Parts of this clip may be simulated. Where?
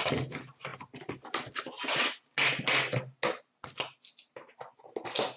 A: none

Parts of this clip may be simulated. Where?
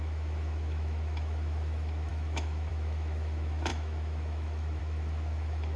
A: 0.0-5.8 (autoencoder, DAC-VAE)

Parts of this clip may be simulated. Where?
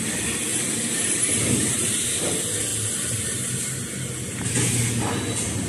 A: 0.5-2.1 (vocoder, BigVGAN v2)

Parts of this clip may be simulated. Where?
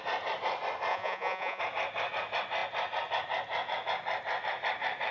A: 0.9-1.6 (vocoder, Vocos)